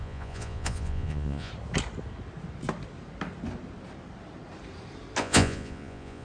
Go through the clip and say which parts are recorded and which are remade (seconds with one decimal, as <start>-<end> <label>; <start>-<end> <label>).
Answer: 0.0-1.5 remade; 1.5-5.2 recorded; 5.2-6.2 remade